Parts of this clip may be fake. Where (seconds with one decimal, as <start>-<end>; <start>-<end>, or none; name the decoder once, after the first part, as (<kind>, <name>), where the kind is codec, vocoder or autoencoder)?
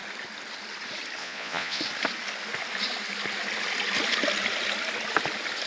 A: 1.2-1.8 (vocoder, Vocos)